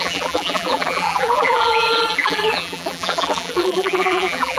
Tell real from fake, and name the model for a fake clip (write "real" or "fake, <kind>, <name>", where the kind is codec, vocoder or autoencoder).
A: fake, vocoder, BigVGAN v2